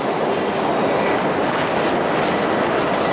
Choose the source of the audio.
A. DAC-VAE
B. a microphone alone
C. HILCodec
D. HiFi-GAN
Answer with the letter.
B